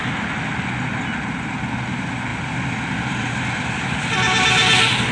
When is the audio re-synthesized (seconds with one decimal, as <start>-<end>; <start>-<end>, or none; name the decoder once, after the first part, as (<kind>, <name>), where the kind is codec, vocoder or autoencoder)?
2.3-3.5 (vocoder, BigVGAN v2)

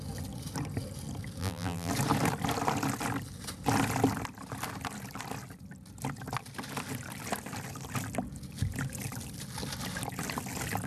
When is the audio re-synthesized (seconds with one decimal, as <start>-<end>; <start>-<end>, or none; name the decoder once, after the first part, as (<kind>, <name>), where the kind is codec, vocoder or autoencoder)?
1.4-1.9 (vocoder, BigVGAN v2)

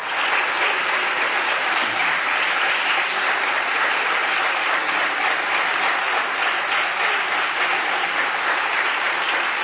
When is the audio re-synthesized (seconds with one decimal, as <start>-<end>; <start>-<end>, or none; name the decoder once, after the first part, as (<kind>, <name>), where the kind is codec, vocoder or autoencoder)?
2.0-3.6 (vocoder, BigVGAN v2); 4.2-9.2